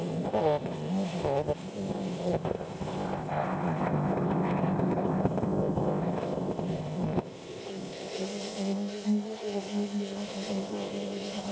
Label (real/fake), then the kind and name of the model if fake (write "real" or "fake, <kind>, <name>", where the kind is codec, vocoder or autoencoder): fake, codec, ZipCodec